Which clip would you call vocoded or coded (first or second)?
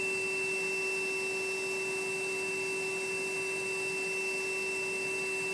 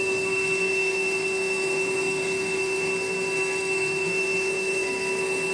second